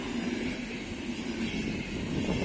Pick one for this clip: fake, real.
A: real